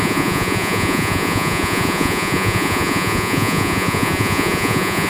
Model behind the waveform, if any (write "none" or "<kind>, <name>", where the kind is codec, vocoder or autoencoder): vocoder, Vocos